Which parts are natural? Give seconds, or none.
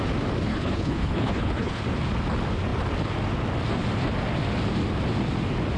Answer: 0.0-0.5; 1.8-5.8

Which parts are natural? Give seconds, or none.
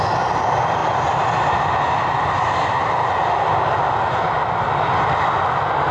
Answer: 0.0-5.9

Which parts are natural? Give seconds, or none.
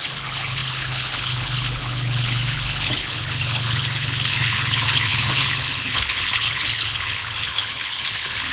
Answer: none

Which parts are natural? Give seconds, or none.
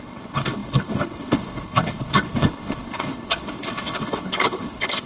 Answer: none